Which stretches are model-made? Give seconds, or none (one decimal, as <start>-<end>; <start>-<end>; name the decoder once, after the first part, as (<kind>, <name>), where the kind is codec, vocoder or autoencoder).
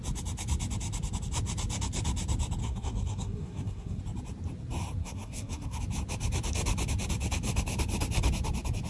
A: 2.6-4.0 (codec, SNAC); 5.0-5.8